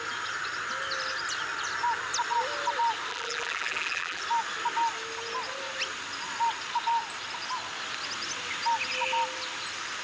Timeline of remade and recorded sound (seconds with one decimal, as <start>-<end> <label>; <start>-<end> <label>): 0.0-3.1 recorded; 3.1-4.2 remade; 4.2-10.0 recorded